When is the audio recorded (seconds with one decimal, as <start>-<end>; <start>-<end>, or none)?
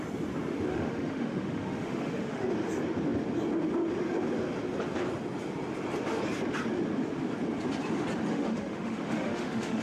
0.0-0.7; 2.5-8.3